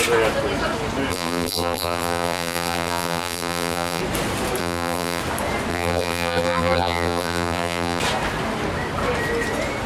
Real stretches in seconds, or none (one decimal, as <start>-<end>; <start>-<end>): 0.0-1.1; 4.0-4.6; 5.2-5.7; 8.0-9.9